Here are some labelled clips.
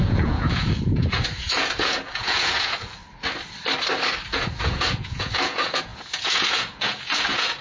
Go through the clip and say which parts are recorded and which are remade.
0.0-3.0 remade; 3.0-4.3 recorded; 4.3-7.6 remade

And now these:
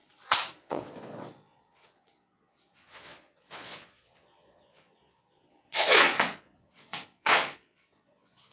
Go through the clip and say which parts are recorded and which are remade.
0.0-0.6 recorded; 0.6-8.5 remade